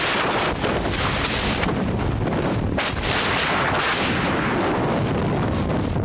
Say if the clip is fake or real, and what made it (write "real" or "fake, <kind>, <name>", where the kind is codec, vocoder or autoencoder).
fake, vocoder, BigVGAN v2